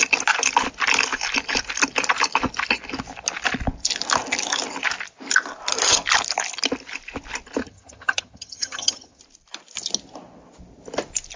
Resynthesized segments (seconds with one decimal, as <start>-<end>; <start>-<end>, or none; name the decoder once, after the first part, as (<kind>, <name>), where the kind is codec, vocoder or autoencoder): 7.6-9.2 (vocoder, HiFi-GAN)